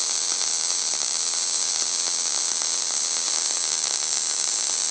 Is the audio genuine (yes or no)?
yes